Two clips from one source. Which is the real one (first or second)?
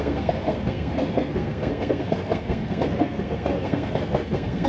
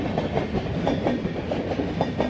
second